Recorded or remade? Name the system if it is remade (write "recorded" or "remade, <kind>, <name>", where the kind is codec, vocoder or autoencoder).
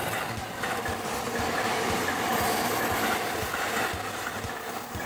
recorded